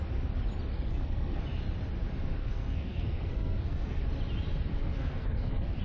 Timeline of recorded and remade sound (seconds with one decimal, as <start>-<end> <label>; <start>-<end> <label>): 0.0-0.7 recorded; 0.7-1.4 remade; 1.4-2.4 recorded; 2.4-4.0 remade; 4.0-4.7 recorded; 4.7-5.8 remade